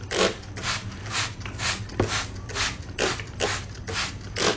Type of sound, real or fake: real